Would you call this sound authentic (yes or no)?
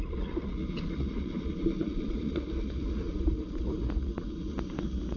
no